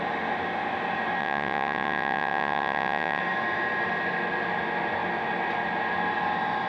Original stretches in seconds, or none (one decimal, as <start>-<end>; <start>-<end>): 0.0-1.2; 3.2-6.7